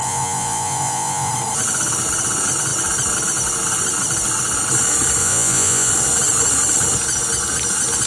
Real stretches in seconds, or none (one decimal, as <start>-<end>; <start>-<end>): 1.3-5.2; 5.9-8.1